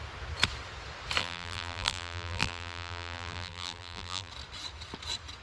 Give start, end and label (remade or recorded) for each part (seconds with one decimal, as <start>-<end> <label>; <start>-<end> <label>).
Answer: 0.0-1.2 recorded; 1.2-4.3 remade; 4.3-5.4 recorded